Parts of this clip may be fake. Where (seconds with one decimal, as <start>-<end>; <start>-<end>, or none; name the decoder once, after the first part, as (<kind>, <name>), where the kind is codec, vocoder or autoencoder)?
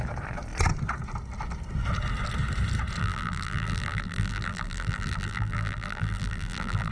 3.0-6.9 (vocoder, BigVGAN v2)